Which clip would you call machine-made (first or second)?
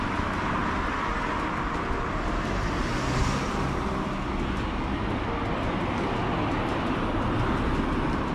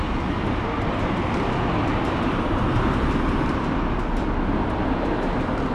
second